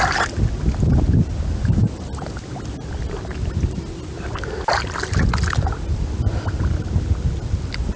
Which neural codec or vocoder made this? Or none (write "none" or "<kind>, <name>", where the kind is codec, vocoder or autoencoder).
none